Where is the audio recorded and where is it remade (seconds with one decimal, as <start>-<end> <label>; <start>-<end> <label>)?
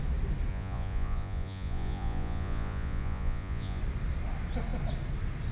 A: 0.0-0.5 recorded; 0.5-3.8 remade; 3.8-5.5 recorded